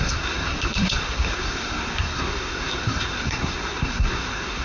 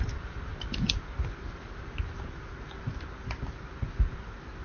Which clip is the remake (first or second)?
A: first